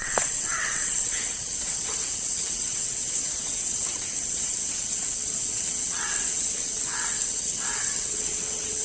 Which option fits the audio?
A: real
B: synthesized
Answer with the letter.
B